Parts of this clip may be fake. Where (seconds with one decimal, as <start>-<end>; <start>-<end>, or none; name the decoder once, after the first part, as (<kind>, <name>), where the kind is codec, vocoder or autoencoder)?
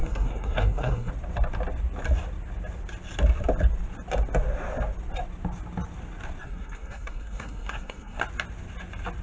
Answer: 0.0-1.1 (codec, SNAC); 6.4-8.2